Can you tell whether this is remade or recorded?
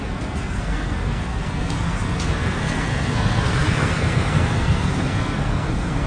remade